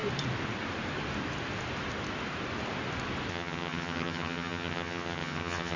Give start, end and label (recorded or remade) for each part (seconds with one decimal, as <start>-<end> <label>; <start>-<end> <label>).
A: 0.0-3.3 recorded; 3.3-5.8 remade